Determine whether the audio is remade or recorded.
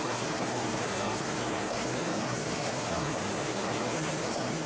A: remade